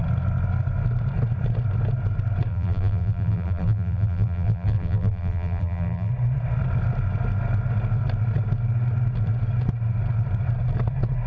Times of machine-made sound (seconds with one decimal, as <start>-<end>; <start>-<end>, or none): 2.5-6.1